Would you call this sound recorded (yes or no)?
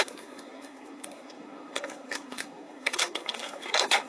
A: no